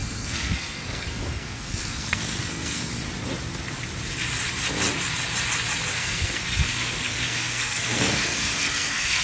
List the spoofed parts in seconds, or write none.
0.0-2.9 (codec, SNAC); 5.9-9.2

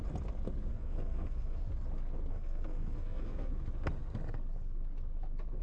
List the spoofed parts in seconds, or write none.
0.7-1.7 (codec, SNAC); 2.3-3.5

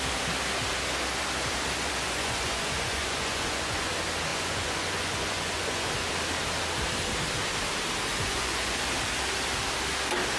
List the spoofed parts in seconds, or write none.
1.8-3.9 (vocoder, Vocos); 4.3-5.9; 8.1-8.8

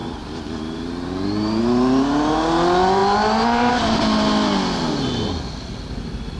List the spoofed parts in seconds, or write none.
0.0-1.6 (vocoder, BigVGAN v2)

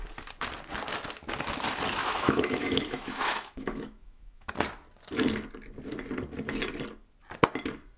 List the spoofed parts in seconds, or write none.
2.0-4.5 (autoencoder, DAC-VAE)

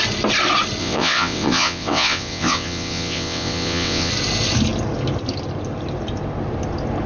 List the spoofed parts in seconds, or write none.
0.8-4.1 (vocoder, WaveNeXt)

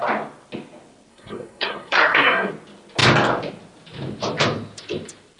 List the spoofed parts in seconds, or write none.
1.1-2.5 (codec, SNAC)